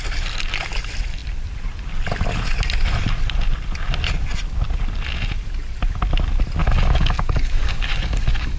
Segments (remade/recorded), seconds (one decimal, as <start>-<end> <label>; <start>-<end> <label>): 0.0-6.6 recorded; 6.6-8.6 remade